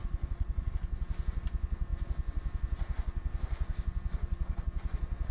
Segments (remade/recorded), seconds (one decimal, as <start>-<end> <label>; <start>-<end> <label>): 0.0-0.7 remade; 0.7-5.3 recorded